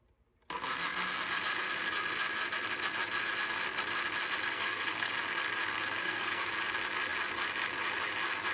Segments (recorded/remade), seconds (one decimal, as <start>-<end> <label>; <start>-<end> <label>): 0.0-4.5 recorded; 4.5-5.1 remade; 5.1-6.0 recorded; 6.0-6.5 remade; 6.5-8.5 recorded